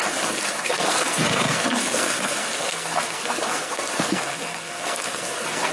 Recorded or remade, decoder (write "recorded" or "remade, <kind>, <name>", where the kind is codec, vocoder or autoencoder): remade, codec, SNAC